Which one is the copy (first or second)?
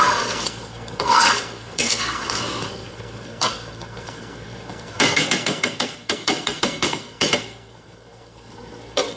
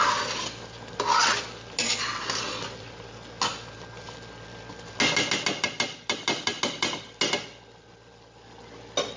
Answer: first